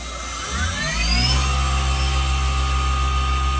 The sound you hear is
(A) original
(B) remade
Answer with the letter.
A